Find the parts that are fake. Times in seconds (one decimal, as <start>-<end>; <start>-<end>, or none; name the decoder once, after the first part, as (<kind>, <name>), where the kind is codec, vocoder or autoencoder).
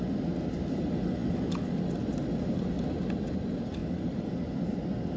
none